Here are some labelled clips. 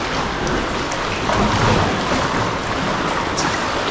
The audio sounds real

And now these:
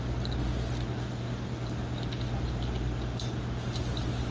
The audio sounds real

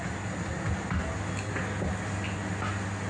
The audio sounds real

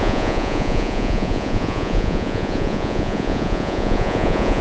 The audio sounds fake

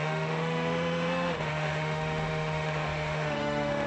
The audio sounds fake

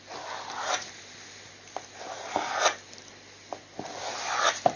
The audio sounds real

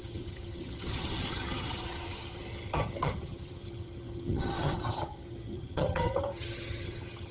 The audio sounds fake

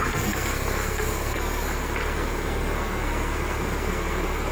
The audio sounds fake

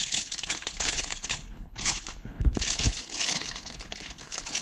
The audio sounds fake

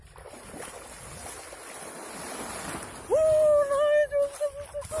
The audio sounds real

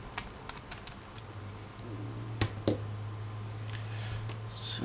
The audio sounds real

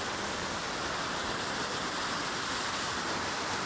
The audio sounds fake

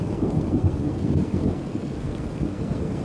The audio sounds fake